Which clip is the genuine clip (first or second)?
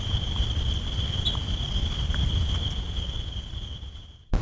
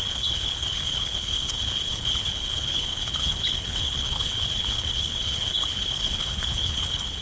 first